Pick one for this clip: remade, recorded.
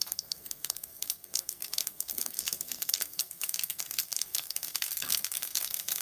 remade